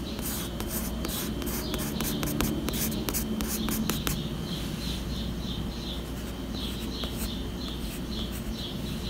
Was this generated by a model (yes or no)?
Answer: no